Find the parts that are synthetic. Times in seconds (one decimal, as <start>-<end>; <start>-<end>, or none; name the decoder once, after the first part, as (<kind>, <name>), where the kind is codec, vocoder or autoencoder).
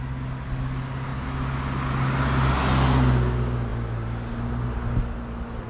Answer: none